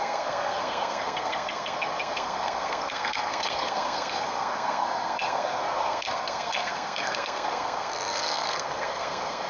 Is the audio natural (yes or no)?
no